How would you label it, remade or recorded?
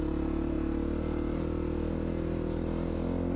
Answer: recorded